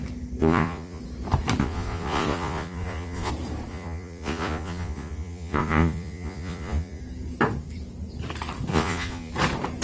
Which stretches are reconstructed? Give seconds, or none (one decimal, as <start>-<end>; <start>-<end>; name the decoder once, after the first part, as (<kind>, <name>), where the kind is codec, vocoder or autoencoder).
0.4-1.0 (vocoder, Vocos); 1.6-3.3; 3.7-7.0; 8.7-9.3